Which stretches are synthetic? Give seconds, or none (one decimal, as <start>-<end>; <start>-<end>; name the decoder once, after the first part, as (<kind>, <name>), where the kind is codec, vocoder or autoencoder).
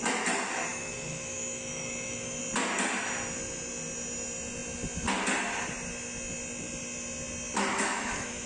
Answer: 0.7-2.4 (autoencoder, DAC-VAE); 7.7-8.5